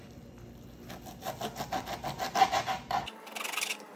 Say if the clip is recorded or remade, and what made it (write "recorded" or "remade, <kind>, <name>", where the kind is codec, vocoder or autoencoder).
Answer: recorded